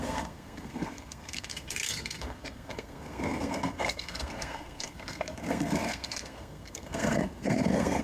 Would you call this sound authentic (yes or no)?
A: no